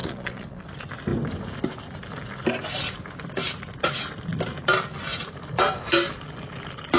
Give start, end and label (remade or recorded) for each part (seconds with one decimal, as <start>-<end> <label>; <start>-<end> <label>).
0.0-0.6 remade; 0.6-7.0 recorded